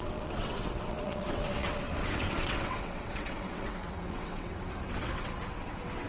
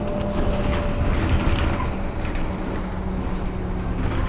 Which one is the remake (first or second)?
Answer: first